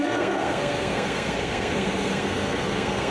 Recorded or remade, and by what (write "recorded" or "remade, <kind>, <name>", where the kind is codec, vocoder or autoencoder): remade, codec, SNAC